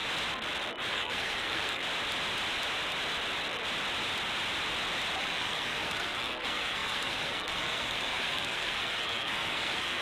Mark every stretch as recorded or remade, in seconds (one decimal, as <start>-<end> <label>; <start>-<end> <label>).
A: 0.0-0.9 recorded; 0.9-1.8 remade; 1.8-5.2 recorded; 5.2-10.0 remade